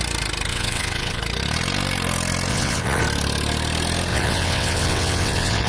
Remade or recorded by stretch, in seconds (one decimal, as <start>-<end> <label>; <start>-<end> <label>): 0.0-0.5 recorded; 0.5-1.2 remade; 1.2-2.5 recorded; 2.5-3.0 remade; 3.0-4.1 recorded; 4.1-5.7 remade

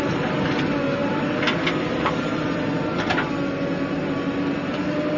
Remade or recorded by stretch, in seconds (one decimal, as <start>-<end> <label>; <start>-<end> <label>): 0.0-5.2 recorded